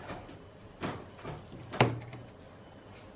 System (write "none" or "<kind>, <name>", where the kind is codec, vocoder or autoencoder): none